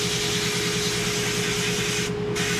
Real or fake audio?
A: real